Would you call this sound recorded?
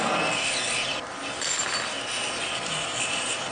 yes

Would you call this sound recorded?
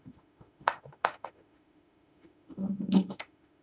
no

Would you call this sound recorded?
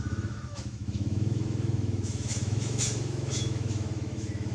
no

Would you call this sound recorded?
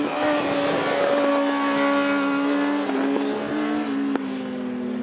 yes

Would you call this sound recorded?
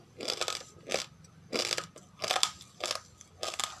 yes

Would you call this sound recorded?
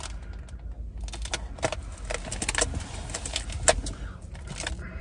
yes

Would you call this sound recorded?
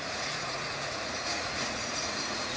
no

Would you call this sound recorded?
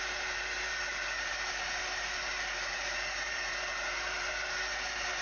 no